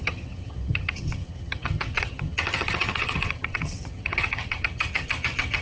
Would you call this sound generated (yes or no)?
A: yes